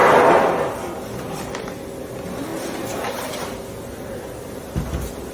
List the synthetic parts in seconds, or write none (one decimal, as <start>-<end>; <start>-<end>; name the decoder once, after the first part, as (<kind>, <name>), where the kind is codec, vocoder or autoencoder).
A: none